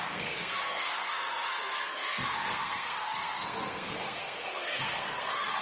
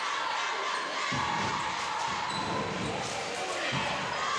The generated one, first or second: first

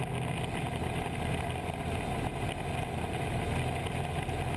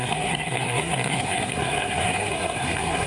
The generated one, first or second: second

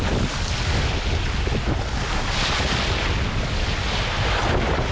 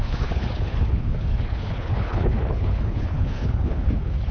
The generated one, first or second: second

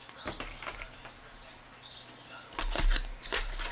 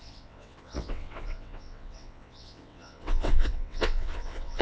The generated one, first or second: second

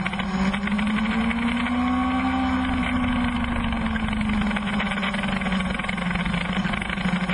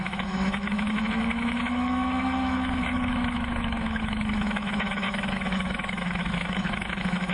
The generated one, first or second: second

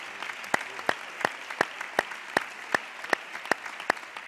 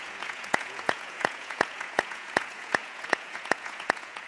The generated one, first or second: second